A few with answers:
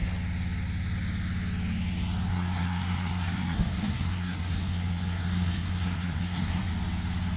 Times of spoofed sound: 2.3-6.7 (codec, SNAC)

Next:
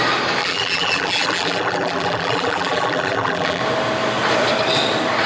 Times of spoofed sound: 0.4-3.6 (vocoder, BigVGAN v2)

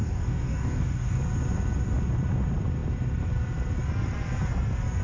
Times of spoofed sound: 0.0-1.2 (codec, DAC)

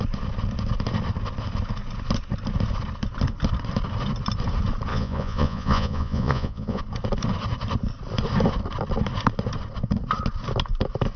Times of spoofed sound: 4.9-6.8 (vocoder, Vocos)

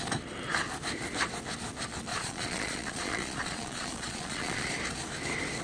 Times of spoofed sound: 2.1-4.7 (vocoder, Vocos)

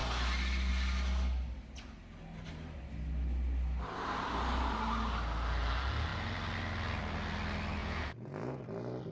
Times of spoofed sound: 7.8-8.6 (vocoder, Vocos)